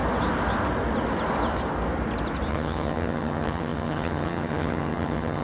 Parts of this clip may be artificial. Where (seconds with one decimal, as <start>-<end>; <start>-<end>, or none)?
2.5-5.4